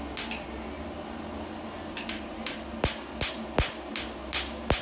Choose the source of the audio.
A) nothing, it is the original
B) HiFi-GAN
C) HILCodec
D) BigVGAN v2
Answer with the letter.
A